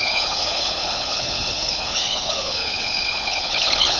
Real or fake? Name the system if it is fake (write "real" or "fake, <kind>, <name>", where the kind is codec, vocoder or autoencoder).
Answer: fake, codec, HILCodec